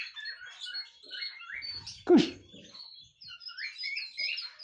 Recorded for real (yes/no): yes